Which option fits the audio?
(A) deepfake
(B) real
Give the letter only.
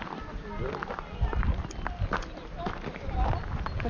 B